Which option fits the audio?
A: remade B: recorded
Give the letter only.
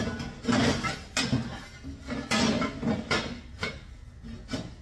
B